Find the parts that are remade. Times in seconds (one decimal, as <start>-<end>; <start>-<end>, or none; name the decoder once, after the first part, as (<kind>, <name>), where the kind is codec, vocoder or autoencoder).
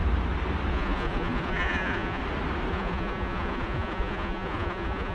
0.7-2.2 (vocoder, Vocos); 2.7-5.1